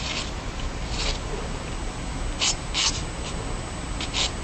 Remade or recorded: recorded